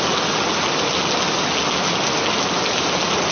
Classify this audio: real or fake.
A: real